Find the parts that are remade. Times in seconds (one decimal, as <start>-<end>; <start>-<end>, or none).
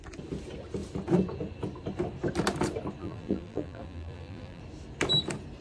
3.0-4.6